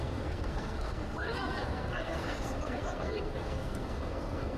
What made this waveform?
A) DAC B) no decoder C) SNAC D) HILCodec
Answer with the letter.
C